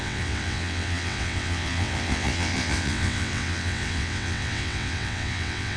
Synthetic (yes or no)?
yes